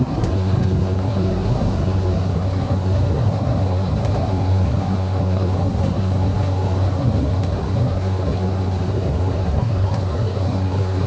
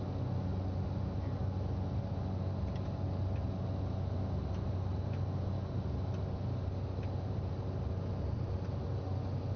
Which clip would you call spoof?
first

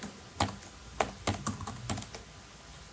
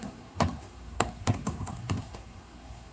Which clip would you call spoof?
second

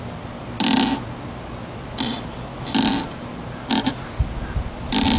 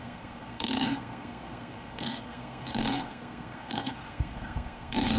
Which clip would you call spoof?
second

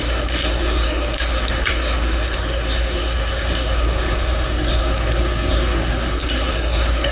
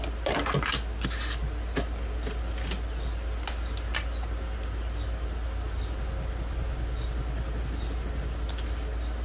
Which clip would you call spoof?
first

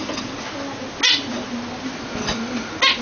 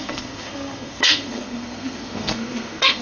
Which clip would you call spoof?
second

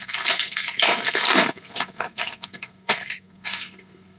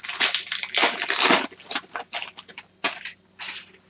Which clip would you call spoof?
first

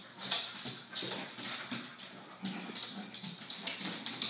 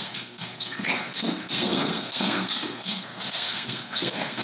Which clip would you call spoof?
second